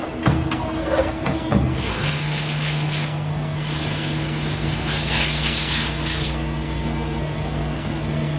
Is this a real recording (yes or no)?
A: no